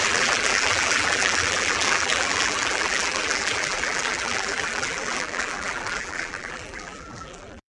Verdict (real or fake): fake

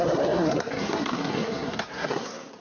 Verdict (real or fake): fake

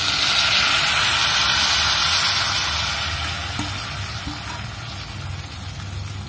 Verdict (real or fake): real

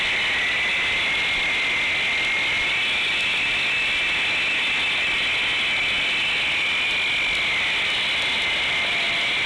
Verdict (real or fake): real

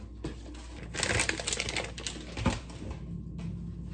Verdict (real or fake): real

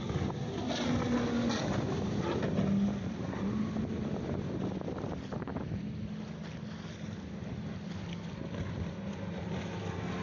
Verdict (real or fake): real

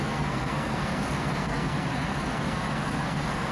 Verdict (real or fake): fake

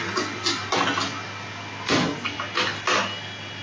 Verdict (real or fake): real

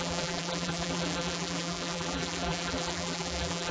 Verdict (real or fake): fake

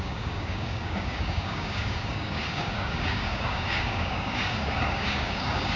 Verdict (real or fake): fake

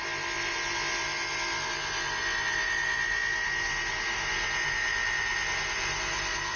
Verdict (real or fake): real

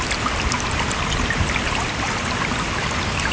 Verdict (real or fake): real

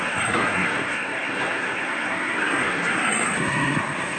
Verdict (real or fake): fake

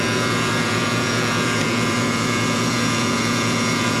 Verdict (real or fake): fake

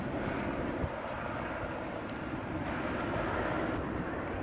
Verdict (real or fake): real